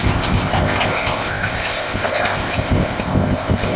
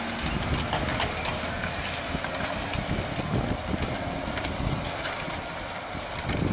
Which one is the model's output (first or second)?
first